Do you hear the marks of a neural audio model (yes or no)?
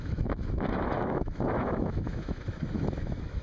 yes